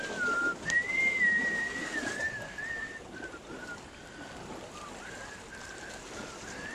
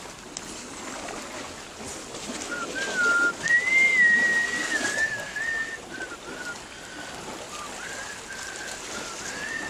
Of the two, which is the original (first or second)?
second